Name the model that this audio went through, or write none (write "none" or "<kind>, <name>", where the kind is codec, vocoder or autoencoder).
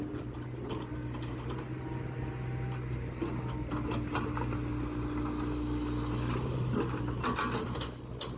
none